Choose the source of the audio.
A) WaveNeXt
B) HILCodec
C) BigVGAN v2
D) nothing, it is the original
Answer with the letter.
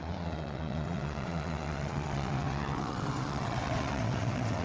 A